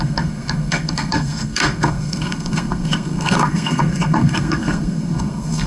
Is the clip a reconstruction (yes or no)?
yes